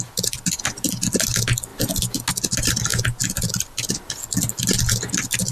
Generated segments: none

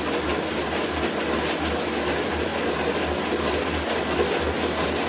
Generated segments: none

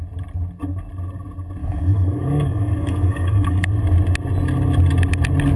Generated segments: 1.6-3.7 (codec, DAC)

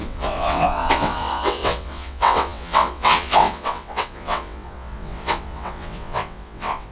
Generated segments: 0.0-6.9 (vocoder, WaveNeXt)

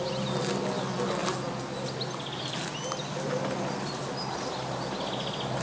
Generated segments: none

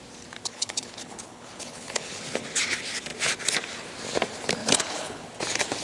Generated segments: 0.5-2.2 (codec, HILCodec); 4.6-5.3

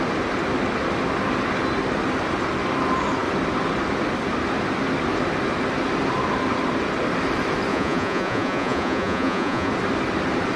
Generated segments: 7.7-9.7 (vocoder, Vocos)